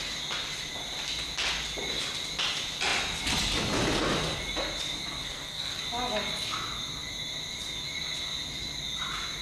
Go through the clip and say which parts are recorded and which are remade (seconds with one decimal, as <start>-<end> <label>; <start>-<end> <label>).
0.0-5.2 recorded; 5.2-5.8 remade; 5.8-9.4 recorded